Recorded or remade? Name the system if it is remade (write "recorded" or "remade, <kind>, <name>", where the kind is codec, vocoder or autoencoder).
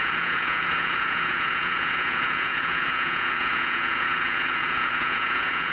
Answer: remade, vocoder, Vocos